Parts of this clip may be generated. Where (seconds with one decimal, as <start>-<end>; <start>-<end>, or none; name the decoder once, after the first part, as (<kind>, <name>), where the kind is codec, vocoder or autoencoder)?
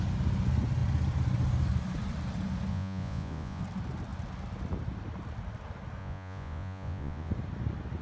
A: 2.7-3.6 (vocoder, Vocos); 6.0-7.3